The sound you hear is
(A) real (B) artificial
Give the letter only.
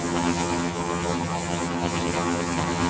B